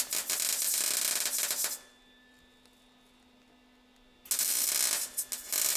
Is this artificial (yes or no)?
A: no